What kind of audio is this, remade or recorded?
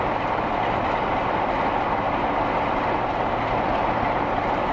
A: recorded